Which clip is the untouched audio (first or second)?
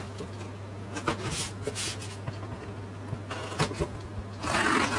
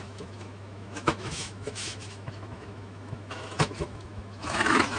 first